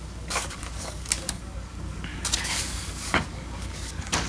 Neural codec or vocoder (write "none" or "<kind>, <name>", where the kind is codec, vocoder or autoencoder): codec, DAC